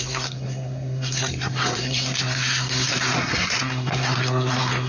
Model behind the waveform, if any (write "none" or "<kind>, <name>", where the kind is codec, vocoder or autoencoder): codec, SNAC